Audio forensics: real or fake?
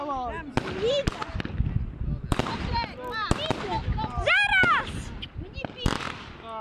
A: real